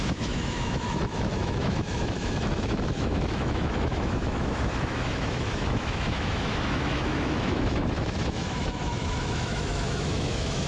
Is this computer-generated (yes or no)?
yes